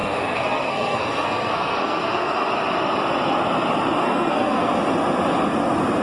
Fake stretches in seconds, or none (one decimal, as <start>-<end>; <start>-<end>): 0.0-2.5; 4.0-4.7